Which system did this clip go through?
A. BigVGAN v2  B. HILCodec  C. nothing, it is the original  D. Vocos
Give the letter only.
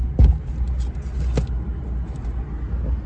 C